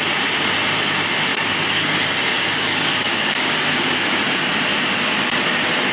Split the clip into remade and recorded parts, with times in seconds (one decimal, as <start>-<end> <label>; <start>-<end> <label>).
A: 0.0-1.3 recorded; 1.3-3.8 remade; 3.8-5.9 recorded